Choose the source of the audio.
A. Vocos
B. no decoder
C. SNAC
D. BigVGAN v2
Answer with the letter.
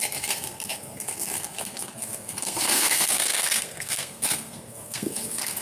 C